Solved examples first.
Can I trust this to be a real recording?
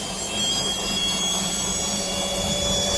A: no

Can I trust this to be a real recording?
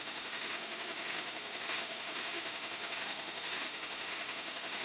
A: no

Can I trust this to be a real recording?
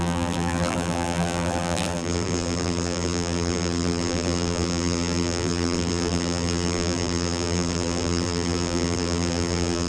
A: no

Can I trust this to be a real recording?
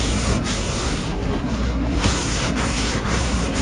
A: no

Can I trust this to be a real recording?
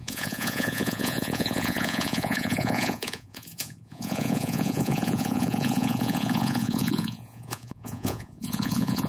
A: no